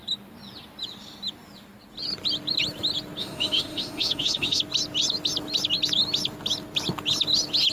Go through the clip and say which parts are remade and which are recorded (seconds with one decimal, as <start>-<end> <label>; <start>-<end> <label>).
0.0-3.2 recorded; 3.2-4.6 remade; 4.6-7.7 recorded